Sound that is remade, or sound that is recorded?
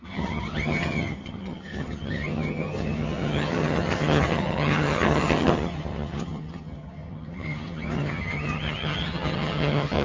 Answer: remade